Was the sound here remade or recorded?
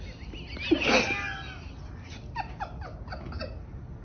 recorded